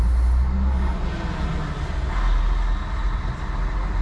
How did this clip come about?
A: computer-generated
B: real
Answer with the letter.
B